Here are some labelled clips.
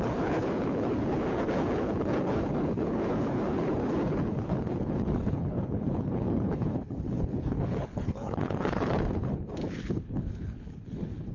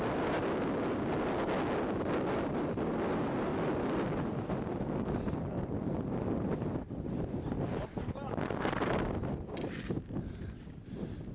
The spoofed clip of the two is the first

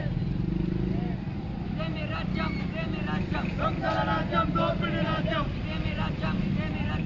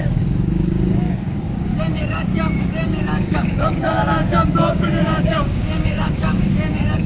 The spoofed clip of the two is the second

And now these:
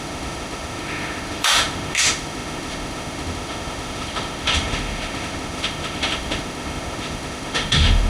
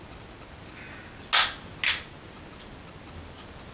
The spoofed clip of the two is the first